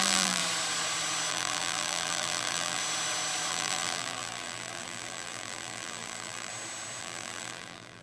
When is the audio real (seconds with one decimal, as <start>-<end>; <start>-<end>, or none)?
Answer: 0.4-1.3; 2.8-3.5; 6.5-7.0

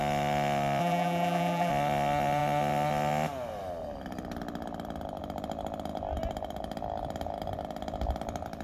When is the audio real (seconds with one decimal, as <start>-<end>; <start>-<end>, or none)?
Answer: 0.0-0.8; 1.7-8.6

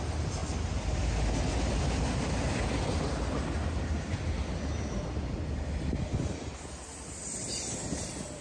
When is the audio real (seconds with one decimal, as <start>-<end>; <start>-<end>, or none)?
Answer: 0.0-8.4

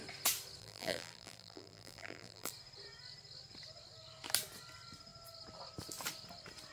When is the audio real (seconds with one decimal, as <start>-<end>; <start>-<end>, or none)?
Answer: 0.0-0.6; 2.5-6.7

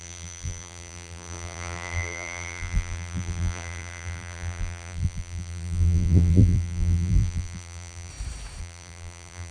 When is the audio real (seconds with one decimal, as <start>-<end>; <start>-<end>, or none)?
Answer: 8.1-8.6

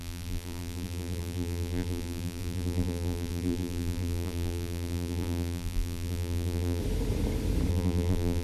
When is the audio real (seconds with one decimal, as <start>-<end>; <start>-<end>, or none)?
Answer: 6.8-7.7

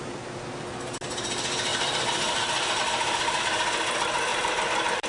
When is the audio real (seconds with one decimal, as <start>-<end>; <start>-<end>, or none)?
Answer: 0.0-1.7; 3.4-4.3